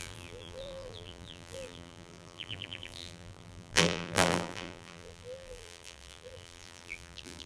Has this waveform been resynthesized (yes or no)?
yes